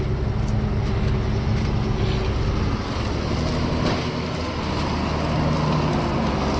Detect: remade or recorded recorded